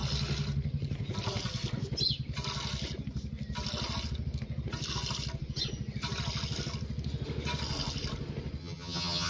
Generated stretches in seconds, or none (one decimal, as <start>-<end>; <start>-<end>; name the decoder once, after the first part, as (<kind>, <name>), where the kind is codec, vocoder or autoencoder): 8.6-9.3 (vocoder, HiFi-GAN)